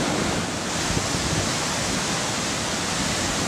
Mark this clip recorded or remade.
recorded